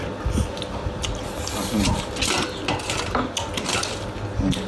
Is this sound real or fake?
real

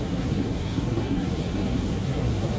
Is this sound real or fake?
fake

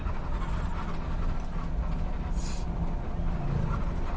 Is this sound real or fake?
real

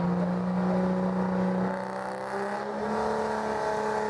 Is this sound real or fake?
real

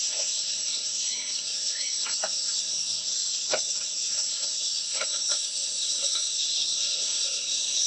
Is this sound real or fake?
fake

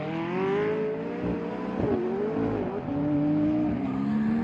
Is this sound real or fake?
real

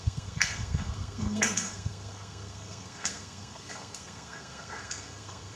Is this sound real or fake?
fake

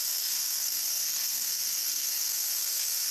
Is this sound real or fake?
fake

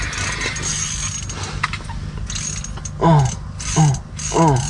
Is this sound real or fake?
real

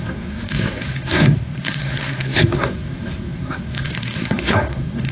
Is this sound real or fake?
fake